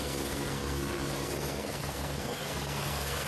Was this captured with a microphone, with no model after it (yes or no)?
no